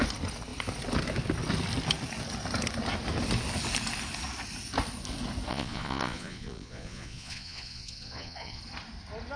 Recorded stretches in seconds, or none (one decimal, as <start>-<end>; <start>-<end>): 0.0-5.5; 8.6-9.4